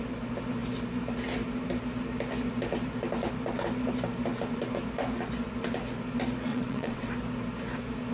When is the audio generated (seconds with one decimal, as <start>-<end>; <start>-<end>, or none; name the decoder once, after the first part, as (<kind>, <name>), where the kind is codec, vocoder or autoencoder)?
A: 6.5-7.1 (vocoder, WaveNeXt)